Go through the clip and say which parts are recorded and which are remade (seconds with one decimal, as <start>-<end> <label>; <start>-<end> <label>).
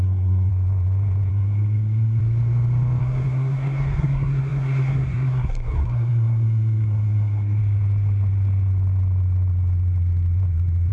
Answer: 0.0-0.5 remade; 0.5-1.3 recorded; 1.3-2.2 remade; 2.2-3.0 recorded; 3.0-7.6 remade; 7.6-10.9 recorded